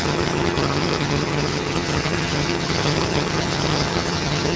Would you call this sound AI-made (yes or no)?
yes